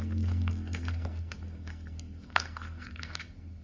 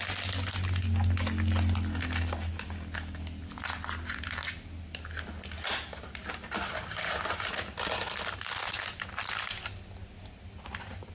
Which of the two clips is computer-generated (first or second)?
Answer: first